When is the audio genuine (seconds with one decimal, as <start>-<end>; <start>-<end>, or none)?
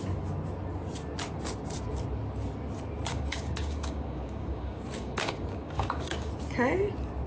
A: 0.0-3.1; 6.3-7.3